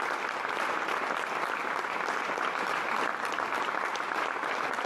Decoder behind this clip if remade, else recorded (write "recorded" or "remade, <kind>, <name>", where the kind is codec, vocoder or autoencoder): remade, vocoder, BigVGAN v2